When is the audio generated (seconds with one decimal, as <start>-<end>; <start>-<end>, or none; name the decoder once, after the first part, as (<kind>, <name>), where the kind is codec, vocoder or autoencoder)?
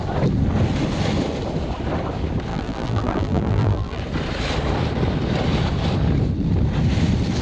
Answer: 2.5-4.0 (vocoder, BigVGAN v2)